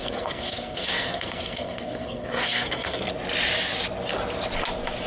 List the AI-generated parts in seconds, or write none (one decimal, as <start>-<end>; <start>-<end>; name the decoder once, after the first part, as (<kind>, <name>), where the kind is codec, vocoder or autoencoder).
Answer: 0.0-3.1 (codec, SNAC)